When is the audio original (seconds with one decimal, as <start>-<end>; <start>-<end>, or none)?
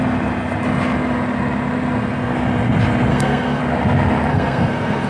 0.0-3.1; 3.6-4.3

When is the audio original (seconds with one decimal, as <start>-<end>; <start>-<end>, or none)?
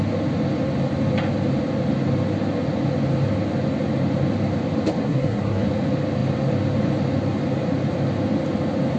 0.0-5.0; 5.7-9.0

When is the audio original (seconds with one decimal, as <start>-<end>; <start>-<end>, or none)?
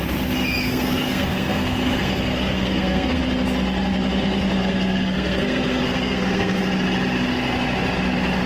0.0-0.6; 3.2-4.6; 6.6-8.5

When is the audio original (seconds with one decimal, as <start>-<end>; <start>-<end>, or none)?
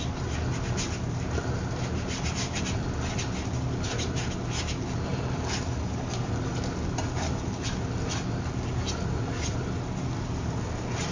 0.0-11.1